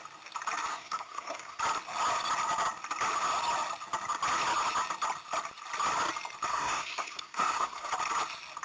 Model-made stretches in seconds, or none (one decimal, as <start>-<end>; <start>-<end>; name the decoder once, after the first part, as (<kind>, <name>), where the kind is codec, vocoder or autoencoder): 0.7-1.6 (codec, SNAC); 6.5-7.9